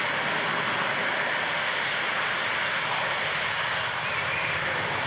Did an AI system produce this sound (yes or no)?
no